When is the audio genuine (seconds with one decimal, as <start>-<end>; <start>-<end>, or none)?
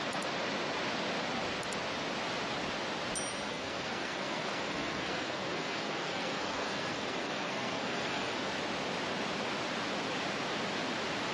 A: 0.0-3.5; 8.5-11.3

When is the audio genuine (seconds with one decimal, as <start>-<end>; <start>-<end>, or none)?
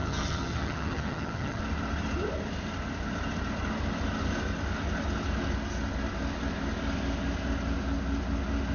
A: 1.6-8.7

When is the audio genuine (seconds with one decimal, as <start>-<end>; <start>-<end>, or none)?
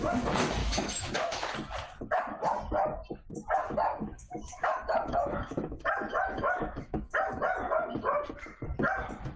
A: 0.0-0.6; 1.5-4.1; 7.3-9.4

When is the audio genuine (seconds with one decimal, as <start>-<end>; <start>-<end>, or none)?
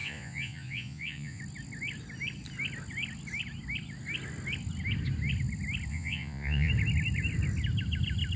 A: 1.4-5.9; 6.7-8.4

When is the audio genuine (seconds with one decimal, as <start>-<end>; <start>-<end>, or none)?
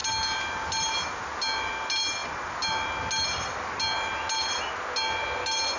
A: 0.0-5.8